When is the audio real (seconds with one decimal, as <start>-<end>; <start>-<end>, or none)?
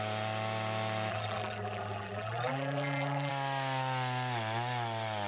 0.0-1.1; 3.3-5.3